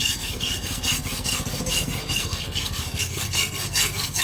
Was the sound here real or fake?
fake